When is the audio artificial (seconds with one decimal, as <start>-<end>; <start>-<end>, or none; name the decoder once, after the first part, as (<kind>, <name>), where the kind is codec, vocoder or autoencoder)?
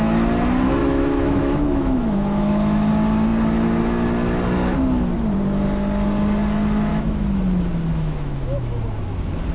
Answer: 0.8-2.9 (autoencoder, DAC-VAE); 6.9-7.4; 7.9-9.0